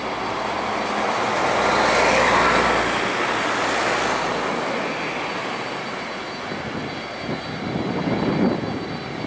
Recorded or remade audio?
recorded